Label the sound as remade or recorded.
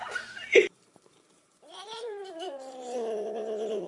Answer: remade